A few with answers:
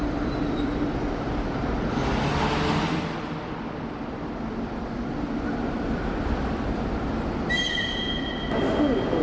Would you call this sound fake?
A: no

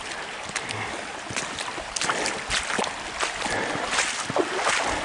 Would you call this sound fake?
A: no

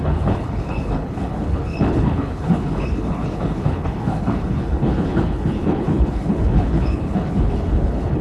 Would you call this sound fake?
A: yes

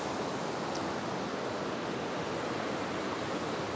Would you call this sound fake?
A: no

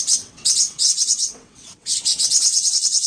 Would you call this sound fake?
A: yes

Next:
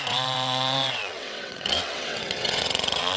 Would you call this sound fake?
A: yes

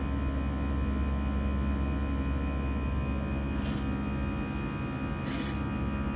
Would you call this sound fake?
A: no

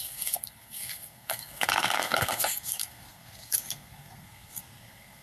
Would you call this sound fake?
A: yes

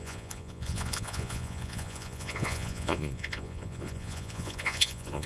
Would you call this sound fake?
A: yes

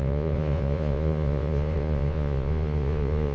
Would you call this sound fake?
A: yes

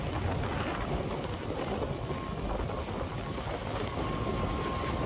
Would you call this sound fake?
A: no